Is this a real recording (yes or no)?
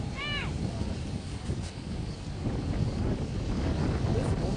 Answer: no